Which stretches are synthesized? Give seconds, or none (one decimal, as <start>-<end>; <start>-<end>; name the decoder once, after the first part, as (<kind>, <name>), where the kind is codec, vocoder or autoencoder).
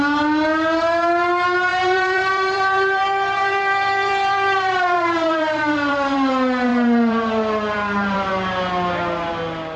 1.7-6.3 (vocoder, BigVGAN v2); 6.7-8.3